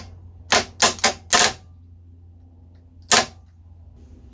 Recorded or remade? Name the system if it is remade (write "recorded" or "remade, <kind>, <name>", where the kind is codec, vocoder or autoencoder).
recorded